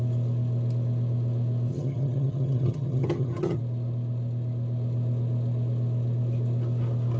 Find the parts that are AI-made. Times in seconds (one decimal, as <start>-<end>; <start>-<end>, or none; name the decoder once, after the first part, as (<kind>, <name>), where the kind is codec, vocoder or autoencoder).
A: 1.7-3.6 (vocoder, HiFi-GAN)